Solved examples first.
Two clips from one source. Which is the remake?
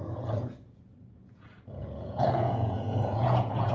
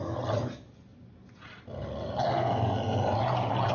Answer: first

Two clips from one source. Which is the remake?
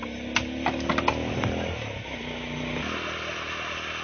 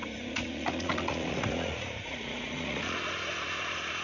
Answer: second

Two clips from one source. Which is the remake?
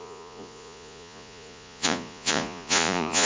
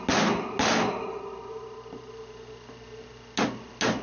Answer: first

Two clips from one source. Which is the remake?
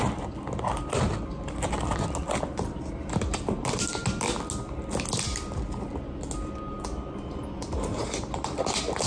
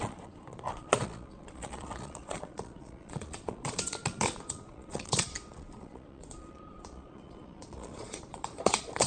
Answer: second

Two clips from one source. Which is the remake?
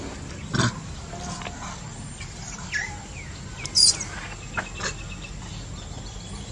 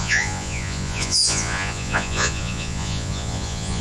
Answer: second